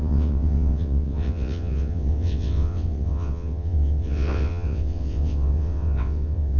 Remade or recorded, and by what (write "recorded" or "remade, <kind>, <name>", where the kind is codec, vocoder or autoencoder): remade, vocoder, WaveNeXt